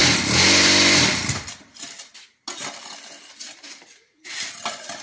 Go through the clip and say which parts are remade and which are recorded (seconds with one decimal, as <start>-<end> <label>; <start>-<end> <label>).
0.0-1.9 remade; 1.9-5.0 recorded

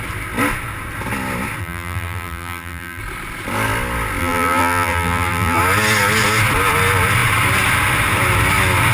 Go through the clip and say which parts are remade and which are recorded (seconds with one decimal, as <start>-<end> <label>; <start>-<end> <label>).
0.0-1.6 recorded; 1.6-3.0 remade; 3.0-4.2 recorded; 4.2-5.6 remade; 5.6-8.9 recorded

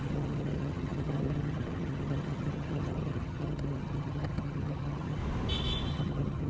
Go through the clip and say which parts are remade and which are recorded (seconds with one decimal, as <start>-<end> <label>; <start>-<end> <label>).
0.0-5.2 remade; 5.2-5.9 recorded; 5.9-6.5 remade

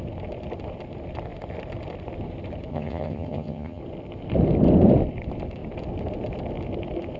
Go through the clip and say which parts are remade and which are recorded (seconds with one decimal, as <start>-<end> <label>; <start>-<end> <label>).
0.0-2.7 recorded; 2.7-3.8 remade; 3.8-7.2 recorded

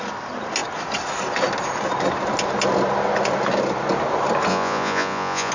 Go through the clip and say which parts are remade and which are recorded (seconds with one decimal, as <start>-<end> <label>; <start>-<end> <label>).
0.0-4.5 recorded; 4.5-5.5 remade